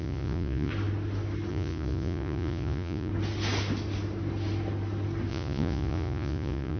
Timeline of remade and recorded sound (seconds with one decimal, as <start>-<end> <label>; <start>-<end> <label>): 0.0-0.7 remade; 0.7-1.5 recorded; 1.5-3.1 remade; 3.1-5.3 recorded; 5.3-6.8 remade